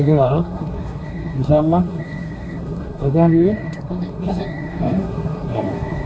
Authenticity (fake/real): fake